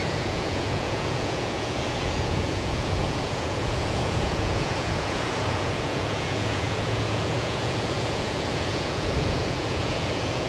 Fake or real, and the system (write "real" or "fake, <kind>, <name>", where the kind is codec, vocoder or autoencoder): fake, vocoder, Vocos